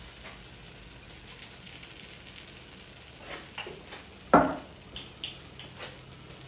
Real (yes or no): yes